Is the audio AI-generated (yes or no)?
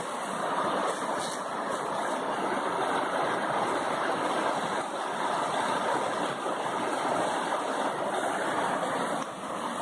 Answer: no